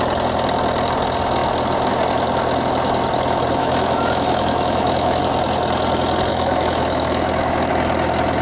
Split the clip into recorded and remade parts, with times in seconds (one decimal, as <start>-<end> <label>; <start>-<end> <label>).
0.0-3.6 recorded; 3.6-5.2 remade; 5.2-6.3 recorded; 6.3-7.7 remade; 7.7-8.4 recorded